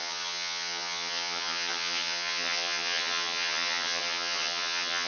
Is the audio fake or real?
fake